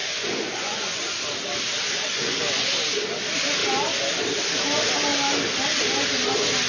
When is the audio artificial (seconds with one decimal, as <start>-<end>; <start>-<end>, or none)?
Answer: 0.0-1.0; 2.1-2.6